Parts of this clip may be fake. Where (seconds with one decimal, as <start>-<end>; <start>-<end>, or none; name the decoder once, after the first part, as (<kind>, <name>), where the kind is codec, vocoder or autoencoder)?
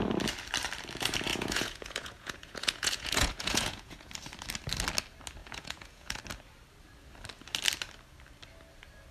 1.3-4.1 (vocoder, Vocos); 5.4-6.2